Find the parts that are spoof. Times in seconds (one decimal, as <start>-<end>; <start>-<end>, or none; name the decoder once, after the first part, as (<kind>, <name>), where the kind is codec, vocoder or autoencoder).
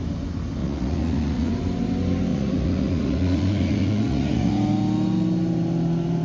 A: 0.6-1.5 (vocoder, Vocos); 2.3-4.5